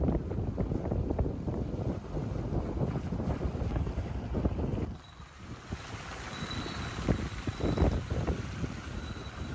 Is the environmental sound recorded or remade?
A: recorded